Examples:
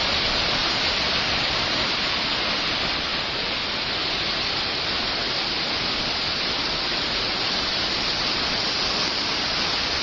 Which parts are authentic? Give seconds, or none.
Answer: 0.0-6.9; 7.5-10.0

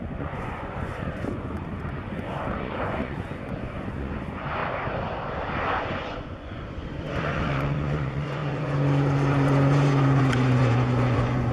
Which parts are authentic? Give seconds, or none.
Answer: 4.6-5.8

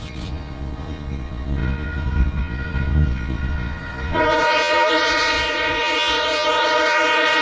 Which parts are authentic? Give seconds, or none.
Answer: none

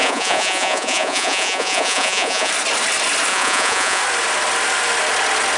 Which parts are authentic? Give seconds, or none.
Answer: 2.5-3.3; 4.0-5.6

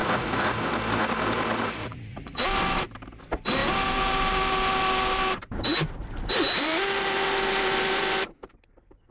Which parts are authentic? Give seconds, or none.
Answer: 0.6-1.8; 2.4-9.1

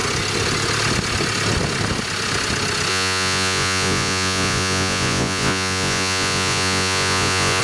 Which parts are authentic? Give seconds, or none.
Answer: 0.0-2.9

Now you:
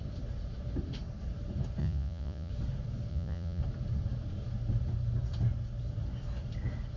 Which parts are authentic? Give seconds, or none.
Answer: 0.0-1.8; 2.5-3.1; 3.6-7.0